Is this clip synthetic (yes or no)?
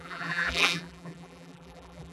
yes